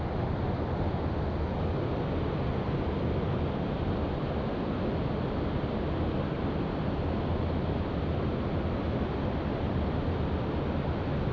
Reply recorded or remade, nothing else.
recorded